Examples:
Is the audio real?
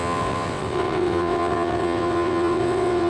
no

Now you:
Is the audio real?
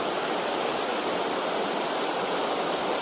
yes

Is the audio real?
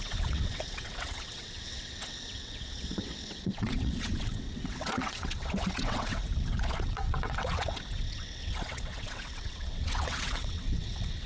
no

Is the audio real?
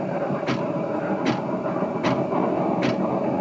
yes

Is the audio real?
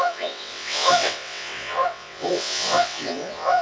no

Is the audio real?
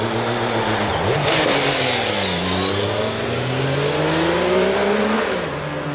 yes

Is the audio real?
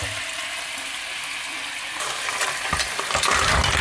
yes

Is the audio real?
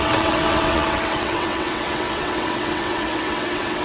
no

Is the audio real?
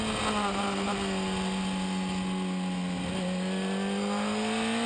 yes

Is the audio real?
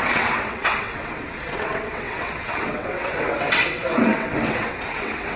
no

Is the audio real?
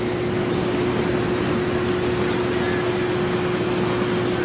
yes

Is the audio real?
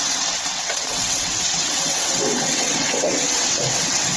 no